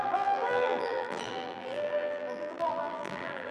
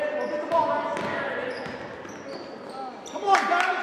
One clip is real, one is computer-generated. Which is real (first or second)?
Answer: second